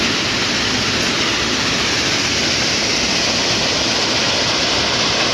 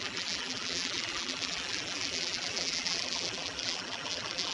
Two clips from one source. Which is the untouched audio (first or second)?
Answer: first